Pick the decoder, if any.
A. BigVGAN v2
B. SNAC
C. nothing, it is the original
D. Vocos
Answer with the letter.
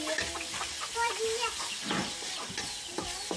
A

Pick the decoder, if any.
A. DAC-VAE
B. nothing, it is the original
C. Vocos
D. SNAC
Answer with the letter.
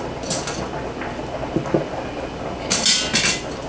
B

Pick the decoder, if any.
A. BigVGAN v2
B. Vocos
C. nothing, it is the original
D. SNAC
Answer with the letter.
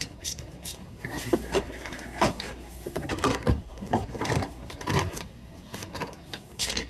D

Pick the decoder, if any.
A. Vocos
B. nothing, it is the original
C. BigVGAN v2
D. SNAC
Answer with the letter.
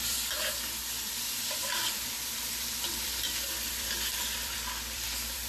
C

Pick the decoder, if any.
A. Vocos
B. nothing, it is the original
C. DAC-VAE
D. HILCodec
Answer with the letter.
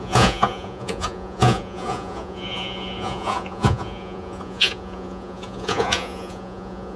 A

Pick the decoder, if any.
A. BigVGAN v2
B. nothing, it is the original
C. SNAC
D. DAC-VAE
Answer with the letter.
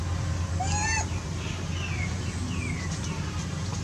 B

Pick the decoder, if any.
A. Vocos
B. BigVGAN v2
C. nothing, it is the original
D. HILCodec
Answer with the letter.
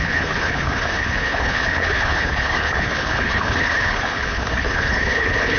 D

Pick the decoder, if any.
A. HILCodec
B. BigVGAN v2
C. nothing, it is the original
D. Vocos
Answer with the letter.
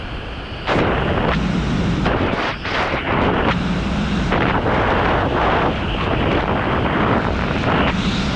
C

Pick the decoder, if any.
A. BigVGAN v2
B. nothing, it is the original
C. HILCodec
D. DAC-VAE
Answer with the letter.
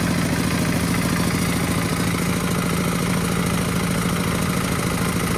B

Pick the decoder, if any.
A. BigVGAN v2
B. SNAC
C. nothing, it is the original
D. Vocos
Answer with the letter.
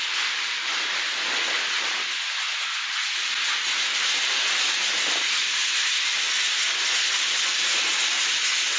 C